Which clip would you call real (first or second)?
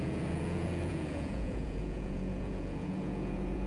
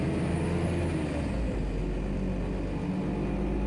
second